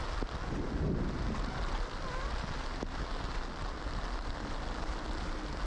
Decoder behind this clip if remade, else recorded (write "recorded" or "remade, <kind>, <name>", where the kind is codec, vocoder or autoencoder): recorded